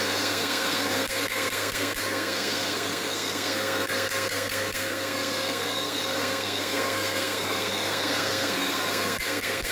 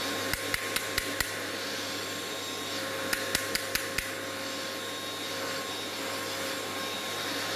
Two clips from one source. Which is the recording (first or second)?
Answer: second